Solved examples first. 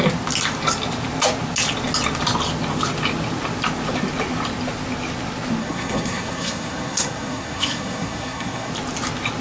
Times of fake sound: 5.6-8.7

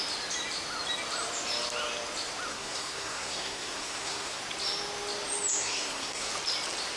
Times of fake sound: 2.5-4.4; 5.6-6.3